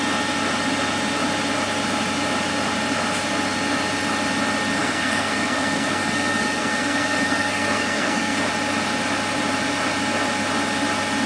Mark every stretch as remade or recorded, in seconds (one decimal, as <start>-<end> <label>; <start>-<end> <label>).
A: 0.0-4.8 recorded; 4.8-8.5 remade; 8.5-11.3 recorded